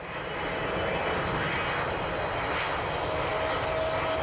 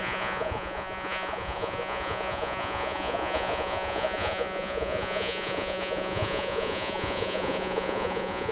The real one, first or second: first